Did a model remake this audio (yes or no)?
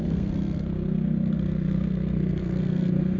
yes